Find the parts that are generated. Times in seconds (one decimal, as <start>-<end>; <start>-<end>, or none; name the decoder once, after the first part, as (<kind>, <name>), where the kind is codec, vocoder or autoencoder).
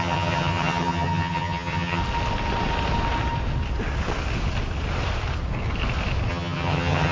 0.0-2.0 (vocoder, HiFi-GAN); 6.3-7.1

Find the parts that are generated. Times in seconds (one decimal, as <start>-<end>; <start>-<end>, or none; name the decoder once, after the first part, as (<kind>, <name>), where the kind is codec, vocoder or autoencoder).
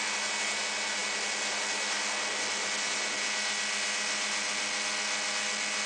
none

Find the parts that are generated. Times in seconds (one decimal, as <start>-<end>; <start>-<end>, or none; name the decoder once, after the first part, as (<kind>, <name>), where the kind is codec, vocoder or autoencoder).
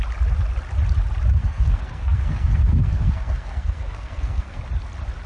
1.4-4.6 (codec, SNAC)